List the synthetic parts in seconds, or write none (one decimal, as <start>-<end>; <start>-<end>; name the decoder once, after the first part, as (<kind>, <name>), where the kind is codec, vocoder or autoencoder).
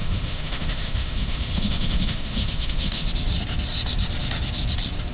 0.0-3.1 (autoencoder, DAC-VAE)